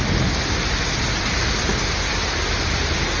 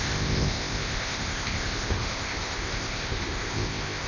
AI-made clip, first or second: second